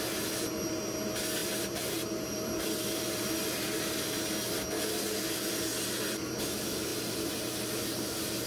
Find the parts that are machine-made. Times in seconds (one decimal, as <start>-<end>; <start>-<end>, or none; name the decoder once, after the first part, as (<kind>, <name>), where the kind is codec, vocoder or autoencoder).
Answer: 1.4-3.8 (vocoder, BigVGAN v2)